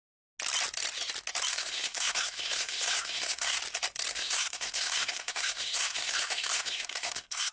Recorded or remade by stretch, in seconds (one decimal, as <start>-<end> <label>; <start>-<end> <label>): 0.0-1.5 recorded; 1.5-3.6 remade; 3.6-4.1 recorded; 4.1-7.5 remade